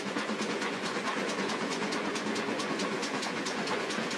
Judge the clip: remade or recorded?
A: remade